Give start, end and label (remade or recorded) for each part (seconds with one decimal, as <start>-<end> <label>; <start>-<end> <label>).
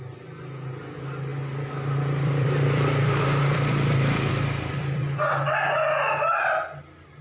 0.0-1.3 recorded; 1.3-5.6 remade; 5.6-7.2 recorded